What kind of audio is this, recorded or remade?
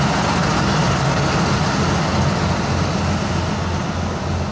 recorded